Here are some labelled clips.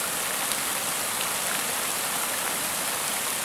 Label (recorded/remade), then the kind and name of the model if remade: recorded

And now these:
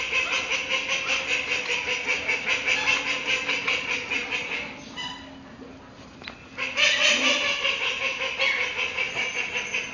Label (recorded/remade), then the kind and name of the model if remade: recorded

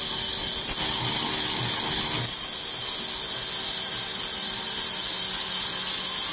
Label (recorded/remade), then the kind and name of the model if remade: recorded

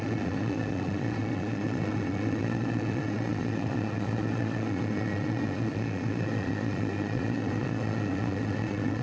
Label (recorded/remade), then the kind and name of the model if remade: remade, vocoder, Vocos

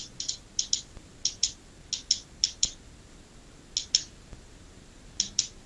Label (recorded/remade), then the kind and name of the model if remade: recorded